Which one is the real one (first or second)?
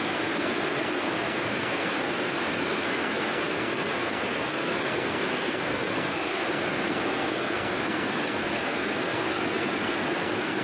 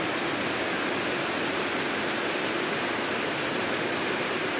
second